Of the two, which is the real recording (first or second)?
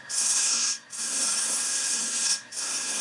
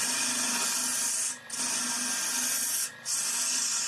second